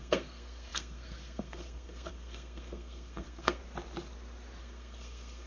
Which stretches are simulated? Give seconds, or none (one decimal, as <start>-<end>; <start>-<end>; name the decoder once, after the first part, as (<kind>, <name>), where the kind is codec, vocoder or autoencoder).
0.0-3.6 (codec, SNAC); 4.6-5.5

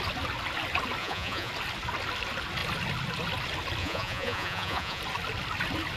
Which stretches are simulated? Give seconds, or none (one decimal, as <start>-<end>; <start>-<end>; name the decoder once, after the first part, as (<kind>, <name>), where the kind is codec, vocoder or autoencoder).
1.0-1.5 (vocoder, Vocos); 3.8-5.0

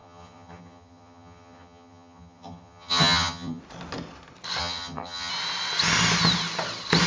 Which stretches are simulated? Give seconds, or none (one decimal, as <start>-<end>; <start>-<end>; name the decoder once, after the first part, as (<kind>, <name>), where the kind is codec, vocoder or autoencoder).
0.0-3.6 (vocoder, HiFi-GAN); 4.6-5.3

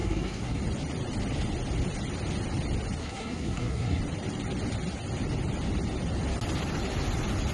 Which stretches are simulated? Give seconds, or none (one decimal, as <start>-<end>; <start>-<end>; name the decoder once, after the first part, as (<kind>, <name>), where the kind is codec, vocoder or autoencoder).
0.0-0.6 (codec, SNAC); 3.0-4.0

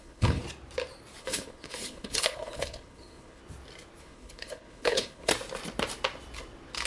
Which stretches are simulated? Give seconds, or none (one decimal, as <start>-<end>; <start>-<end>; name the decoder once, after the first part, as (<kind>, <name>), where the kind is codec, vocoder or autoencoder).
0.0-0.4 (codec, HILCodec); 1.2-3.4; 4.0-5.3

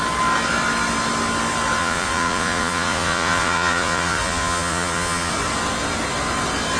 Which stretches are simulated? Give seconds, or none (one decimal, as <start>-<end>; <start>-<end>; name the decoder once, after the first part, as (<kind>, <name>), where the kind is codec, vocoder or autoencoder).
1.8-5.3 (vocoder, Vocos)

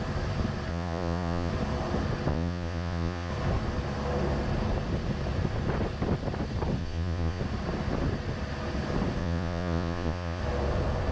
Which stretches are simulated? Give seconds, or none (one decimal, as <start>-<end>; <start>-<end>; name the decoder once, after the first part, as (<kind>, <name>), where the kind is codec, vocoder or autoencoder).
0.7-1.5 (vocoder, Vocos); 2.3-3.3; 6.8-7.4; 9.2-10.4